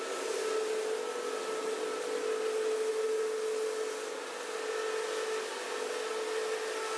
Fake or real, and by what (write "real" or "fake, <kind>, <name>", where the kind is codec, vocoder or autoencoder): real